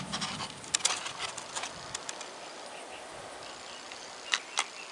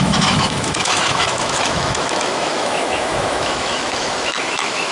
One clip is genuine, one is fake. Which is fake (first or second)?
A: second